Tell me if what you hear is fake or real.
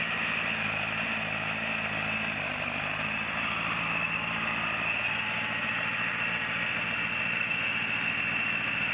real